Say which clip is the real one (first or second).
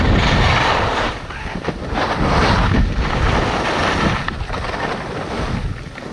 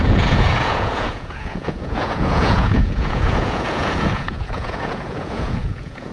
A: first